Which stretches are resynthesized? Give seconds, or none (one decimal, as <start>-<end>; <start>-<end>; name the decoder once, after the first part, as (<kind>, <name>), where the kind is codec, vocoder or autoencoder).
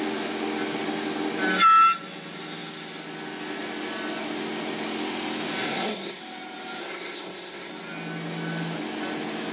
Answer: 5.6-6.2 (codec, SNAC); 6.8-7.7